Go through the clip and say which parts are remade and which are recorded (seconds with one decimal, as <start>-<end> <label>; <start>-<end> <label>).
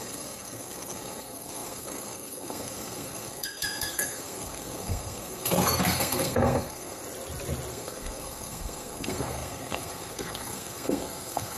0.0-7.0 remade; 7.0-7.7 recorded; 7.7-11.6 remade